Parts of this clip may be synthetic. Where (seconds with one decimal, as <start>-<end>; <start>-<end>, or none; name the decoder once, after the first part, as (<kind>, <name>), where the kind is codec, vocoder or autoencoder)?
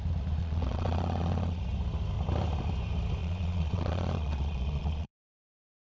0.4-1.6 (vocoder, Vocos); 3.2-5.1